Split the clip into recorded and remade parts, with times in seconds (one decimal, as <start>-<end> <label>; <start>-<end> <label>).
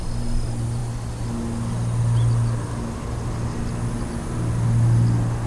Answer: 0.0-5.5 recorded